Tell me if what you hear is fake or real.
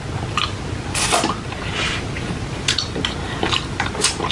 real